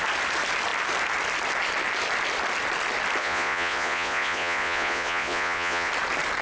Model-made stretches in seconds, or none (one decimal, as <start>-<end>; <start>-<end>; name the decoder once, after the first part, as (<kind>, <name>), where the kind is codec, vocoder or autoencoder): 3.2-5.9 (vocoder, Vocos)